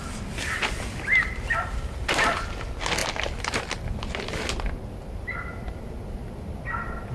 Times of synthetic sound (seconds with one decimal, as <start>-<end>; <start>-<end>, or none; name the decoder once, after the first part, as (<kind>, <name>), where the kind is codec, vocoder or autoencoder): none